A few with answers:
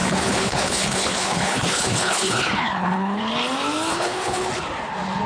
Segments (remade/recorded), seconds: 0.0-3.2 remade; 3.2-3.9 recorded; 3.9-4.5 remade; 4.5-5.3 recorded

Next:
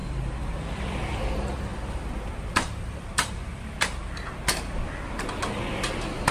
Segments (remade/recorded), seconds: 0.0-1.2 remade; 1.2-1.7 recorded; 1.7-4.1 remade; 4.1-6.3 recorded

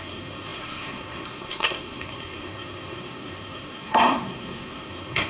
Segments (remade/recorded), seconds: 0.0-5.3 remade

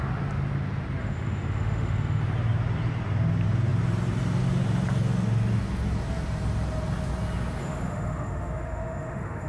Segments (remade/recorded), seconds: 0.0-1.0 recorded; 1.0-2.2 remade; 2.2-7.6 recorded; 7.6-9.5 remade